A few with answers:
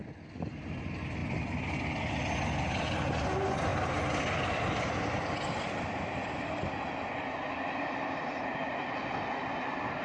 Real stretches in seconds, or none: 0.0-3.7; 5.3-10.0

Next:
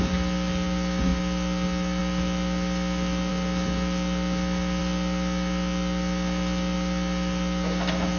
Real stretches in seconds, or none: 0.0-8.2